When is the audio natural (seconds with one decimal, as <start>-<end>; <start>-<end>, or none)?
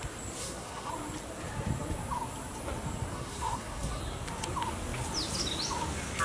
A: 0.0-0.4; 0.9-3.1; 4.0-6.2